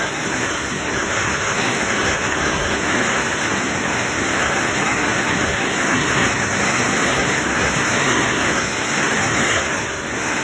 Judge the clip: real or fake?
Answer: fake